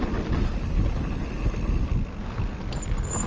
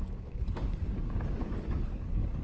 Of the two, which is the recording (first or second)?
first